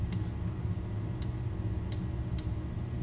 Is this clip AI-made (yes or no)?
no